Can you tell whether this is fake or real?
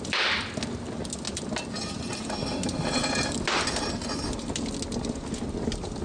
real